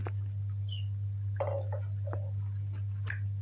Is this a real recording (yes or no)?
yes